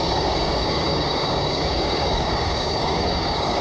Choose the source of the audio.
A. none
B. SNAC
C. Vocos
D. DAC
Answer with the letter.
D